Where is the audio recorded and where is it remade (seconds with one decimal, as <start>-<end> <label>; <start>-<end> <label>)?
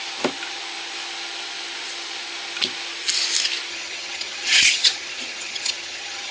0.0-3.7 recorded; 3.7-6.3 remade